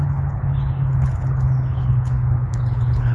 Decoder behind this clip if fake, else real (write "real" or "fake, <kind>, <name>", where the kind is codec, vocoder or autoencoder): fake, codec, HILCodec